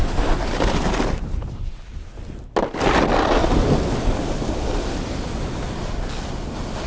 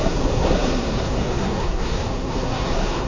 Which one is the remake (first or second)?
second